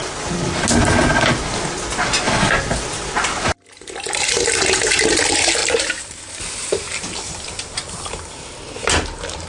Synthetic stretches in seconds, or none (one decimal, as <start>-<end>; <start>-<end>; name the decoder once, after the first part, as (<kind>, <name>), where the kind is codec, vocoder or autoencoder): 5.6-8.1 (vocoder, BigVGAN v2)